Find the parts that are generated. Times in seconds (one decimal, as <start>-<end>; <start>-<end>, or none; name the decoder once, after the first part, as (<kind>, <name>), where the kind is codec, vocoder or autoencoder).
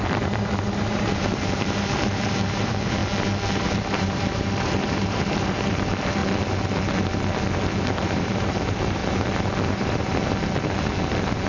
0.0-3.0 (vocoder, BigVGAN v2); 3.5-6.2; 7.9-9.0; 9.7-10.1